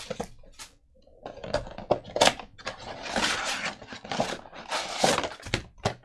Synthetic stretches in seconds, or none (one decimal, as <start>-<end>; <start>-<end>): 0.0-1.1; 4.7-6.0